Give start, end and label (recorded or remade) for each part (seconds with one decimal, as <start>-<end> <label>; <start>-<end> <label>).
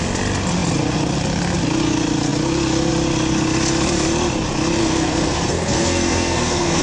0.0-4.8 recorded; 4.8-6.8 remade